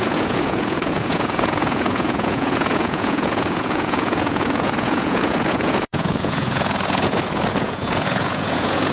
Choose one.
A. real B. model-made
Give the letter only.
B